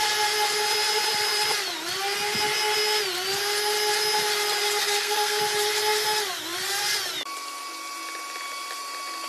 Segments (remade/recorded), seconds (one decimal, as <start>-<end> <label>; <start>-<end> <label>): 0.0-4.8 recorded; 4.8-5.4 remade; 5.4-9.3 recorded